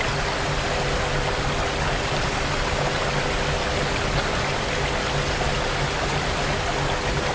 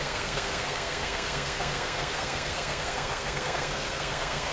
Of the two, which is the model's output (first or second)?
second